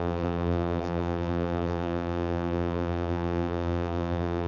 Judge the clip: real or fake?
fake